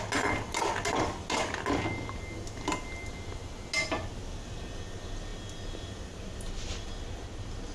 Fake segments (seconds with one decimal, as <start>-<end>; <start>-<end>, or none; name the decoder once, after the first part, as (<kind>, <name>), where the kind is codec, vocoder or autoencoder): none